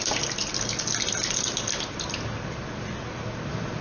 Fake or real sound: real